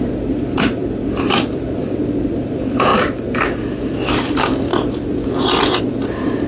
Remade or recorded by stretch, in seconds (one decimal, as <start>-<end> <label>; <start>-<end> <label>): 0.0-2.9 remade; 2.9-3.8 recorded; 3.8-6.5 remade